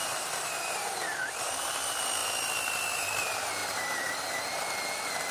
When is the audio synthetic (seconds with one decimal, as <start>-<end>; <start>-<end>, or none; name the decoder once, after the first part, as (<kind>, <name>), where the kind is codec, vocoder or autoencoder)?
0.0-1.3 (vocoder, BigVGAN v2); 3.6-4.6